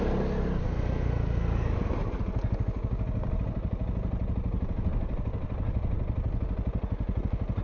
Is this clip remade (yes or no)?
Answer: no